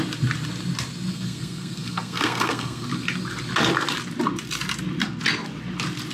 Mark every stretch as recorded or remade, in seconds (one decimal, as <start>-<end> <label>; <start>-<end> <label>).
0.0-1.1 recorded; 1.1-2.9 remade; 2.9-6.1 recorded